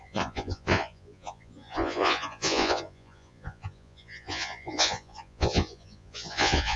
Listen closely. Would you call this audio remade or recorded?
remade